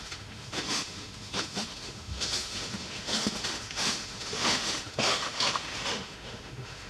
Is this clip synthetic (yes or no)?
yes